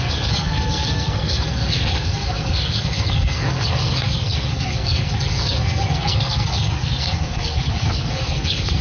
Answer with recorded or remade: remade